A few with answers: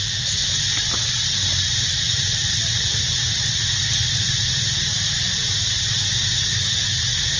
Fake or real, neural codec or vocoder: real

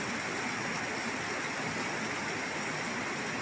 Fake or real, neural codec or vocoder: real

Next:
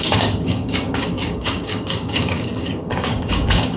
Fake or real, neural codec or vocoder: fake, codec, DAC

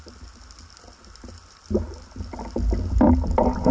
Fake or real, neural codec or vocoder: real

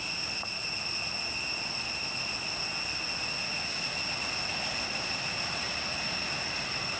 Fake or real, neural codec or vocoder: real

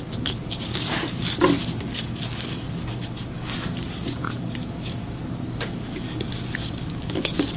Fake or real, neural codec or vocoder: fake, codec, DAC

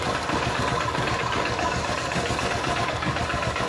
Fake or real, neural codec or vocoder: fake, codec, DAC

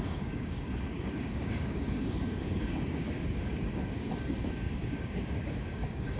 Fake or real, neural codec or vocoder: fake, codec, DAC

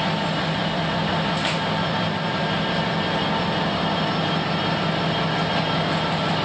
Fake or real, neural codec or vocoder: real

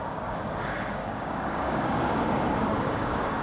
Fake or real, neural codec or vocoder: fake, codec, DAC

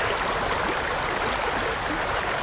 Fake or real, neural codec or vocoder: real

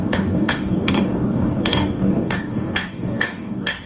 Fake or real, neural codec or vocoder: fake, codec, DAC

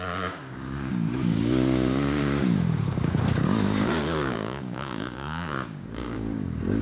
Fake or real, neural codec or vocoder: fake, codec, DAC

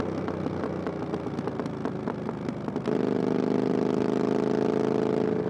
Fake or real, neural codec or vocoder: real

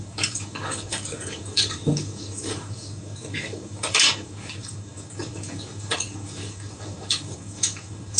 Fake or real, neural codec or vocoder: fake, codec, DAC